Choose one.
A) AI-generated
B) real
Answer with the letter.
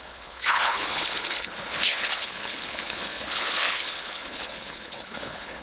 A